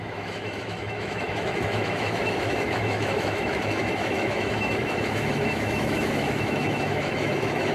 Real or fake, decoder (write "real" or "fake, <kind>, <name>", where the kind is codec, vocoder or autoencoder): fake, autoencoder, DAC-VAE